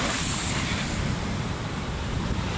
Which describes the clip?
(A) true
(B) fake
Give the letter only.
A